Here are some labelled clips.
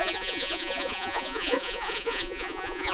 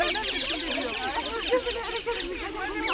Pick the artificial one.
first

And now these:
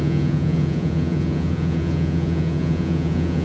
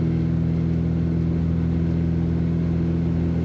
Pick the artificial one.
first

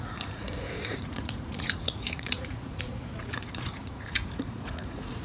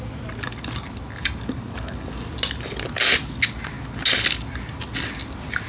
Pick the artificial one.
first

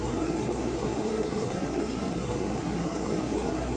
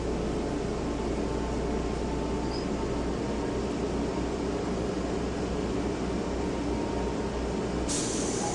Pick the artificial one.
first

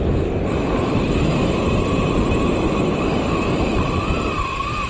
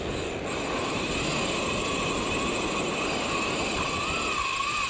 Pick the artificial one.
first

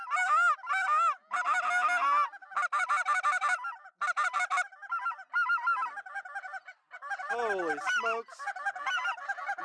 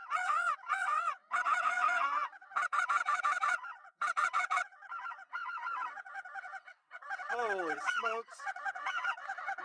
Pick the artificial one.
second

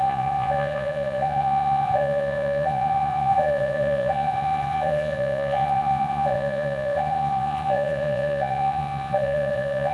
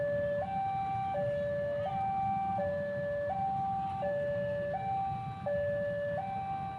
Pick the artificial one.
first